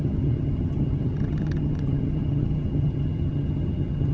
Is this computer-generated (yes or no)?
yes